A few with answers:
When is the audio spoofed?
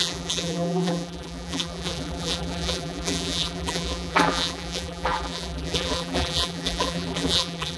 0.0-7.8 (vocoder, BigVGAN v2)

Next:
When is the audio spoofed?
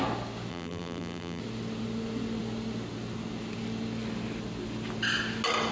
0.5-1.4 (vocoder, BigVGAN v2)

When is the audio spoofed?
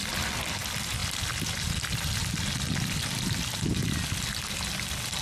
1.0-2.5 (vocoder, BigVGAN v2)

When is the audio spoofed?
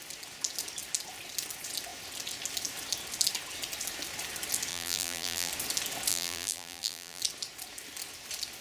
4.7-5.5 (vocoder, BigVGAN v2); 6.1-7.2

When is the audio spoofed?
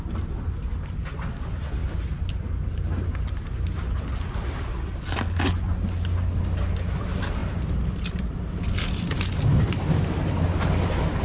7.4-8.3 (vocoder, BigVGAN v2)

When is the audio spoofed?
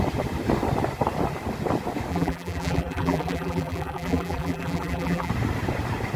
2.1-5.3 (vocoder, BigVGAN v2)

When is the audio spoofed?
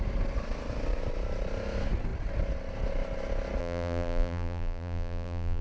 3.6-5.6 (vocoder, BigVGAN v2)